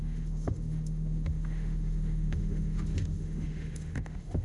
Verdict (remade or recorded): remade